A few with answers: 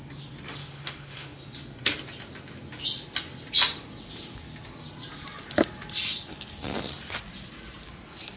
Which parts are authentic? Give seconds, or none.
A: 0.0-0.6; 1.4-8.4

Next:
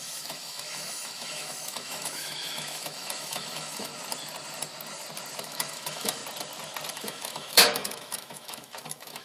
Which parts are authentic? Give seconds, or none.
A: 3.9-5.4; 6.2-6.9

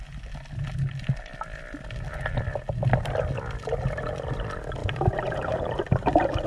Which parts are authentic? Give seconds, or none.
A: 0.0-4.8; 6.1-6.5

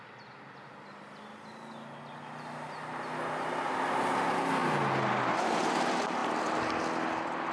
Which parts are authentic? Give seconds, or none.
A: 0.0-7.5

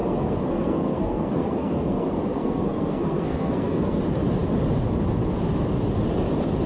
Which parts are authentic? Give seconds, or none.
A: 4.0-6.7

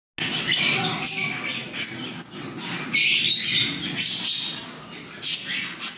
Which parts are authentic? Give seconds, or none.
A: 0.0-6.0